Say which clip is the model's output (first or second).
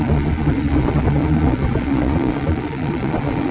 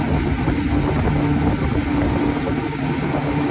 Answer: first